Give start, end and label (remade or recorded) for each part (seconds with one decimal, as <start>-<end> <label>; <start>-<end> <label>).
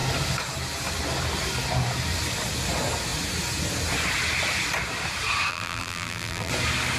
0.0-5.5 recorded; 5.5-6.5 remade; 6.5-7.0 recorded